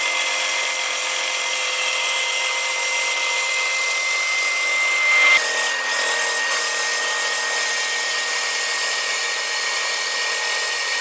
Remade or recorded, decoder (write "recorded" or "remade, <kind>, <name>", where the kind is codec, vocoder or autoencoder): recorded